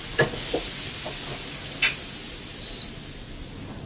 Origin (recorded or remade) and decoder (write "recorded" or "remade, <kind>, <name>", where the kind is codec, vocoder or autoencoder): recorded